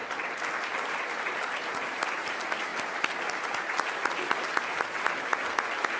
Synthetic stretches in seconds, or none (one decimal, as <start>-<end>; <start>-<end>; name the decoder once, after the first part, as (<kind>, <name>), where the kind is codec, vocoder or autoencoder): none